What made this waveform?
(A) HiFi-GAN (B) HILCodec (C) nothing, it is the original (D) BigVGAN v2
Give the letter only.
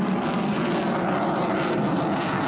C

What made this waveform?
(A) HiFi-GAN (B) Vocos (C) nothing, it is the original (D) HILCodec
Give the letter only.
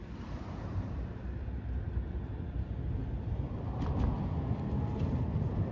C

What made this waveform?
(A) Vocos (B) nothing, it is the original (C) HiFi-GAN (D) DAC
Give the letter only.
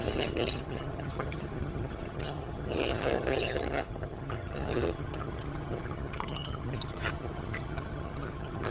C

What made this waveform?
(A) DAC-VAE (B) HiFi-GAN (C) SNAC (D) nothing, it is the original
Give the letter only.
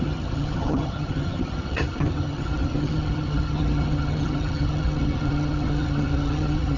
B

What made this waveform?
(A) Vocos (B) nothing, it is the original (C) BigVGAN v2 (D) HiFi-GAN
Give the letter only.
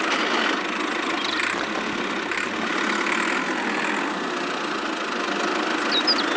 B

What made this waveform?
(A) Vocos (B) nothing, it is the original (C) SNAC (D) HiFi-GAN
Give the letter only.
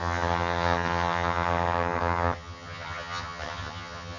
D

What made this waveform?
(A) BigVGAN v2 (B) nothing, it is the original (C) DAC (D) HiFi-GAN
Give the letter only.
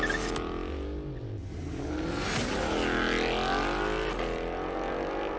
B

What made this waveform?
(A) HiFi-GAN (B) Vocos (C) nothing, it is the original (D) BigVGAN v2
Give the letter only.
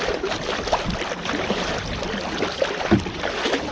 C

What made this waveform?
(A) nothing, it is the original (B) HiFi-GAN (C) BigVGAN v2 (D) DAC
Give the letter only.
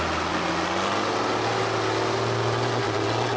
A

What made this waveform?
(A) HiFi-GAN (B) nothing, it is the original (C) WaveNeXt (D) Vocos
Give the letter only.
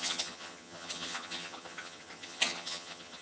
A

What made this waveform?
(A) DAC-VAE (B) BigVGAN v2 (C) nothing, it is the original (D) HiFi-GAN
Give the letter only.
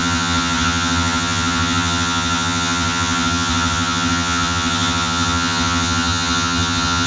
D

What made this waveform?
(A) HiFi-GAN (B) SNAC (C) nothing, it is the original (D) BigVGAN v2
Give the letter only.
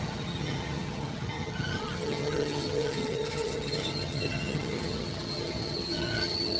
A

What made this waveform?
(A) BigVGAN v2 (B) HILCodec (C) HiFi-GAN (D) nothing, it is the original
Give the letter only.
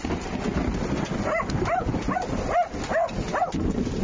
D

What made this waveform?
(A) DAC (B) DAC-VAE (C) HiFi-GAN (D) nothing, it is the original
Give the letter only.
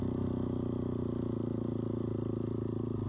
D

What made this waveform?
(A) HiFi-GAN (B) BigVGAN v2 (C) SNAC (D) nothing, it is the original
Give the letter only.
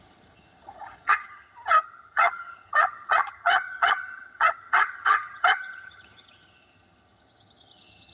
A